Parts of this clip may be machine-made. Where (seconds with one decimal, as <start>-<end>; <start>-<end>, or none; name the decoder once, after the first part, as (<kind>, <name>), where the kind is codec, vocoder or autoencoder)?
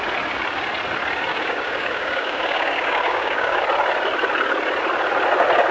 1.3-3.6 (codec, DAC)